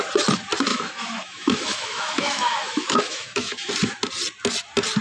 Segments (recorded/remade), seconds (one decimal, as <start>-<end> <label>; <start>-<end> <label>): 0.0-0.7 recorded; 0.7-3.7 remade; 3.7-5.0 recorded